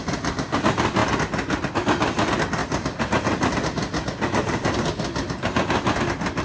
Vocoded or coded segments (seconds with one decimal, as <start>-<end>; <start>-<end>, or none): none